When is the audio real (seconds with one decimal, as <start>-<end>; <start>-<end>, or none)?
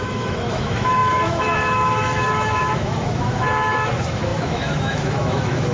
none